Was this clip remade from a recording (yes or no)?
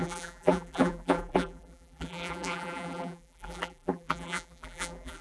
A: yes